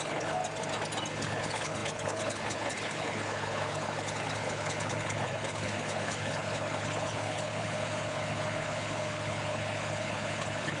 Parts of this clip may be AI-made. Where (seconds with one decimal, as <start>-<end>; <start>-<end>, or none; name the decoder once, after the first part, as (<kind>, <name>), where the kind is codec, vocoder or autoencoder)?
0.0-0.4 (codec, HILCodec); 1.2-10.8